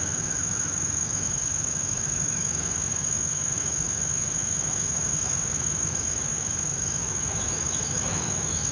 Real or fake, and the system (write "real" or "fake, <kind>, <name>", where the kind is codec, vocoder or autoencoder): fake, autoencoder, DAC-VAE